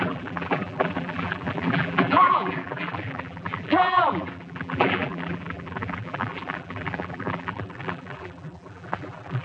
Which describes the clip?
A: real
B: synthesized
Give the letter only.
B